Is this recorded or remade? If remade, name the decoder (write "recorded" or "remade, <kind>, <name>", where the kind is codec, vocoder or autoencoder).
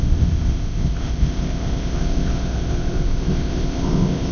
remade, codec, ZipCodec